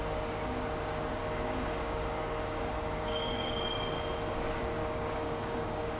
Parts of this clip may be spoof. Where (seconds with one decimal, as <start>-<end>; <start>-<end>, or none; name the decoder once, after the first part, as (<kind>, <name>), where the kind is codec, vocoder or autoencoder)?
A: 1.2-3.6 (codec, DAC); 4.8-6.0